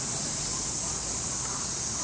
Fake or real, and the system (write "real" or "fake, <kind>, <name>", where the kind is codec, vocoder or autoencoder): real